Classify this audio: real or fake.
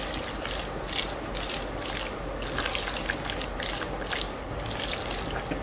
real